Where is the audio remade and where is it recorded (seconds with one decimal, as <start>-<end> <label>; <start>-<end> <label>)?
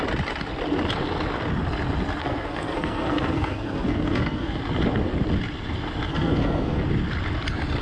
0.0-2.2 recorded; 2.2-4.6 remade; 4.6-6.1 recorded; 6.1-6.8 remade; 6.8-7.8 recorded